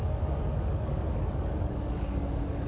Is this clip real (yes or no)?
no